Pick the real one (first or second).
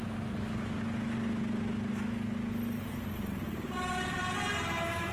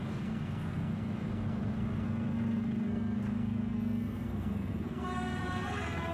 first